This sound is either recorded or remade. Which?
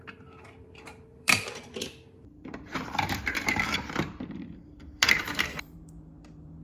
remade